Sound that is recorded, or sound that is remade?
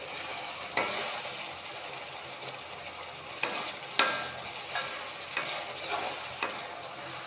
recorded